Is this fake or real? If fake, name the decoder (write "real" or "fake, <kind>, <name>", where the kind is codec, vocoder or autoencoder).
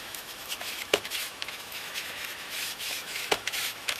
fake, autoencoder, DAC-VAE